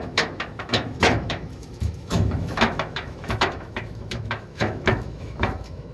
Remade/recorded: remade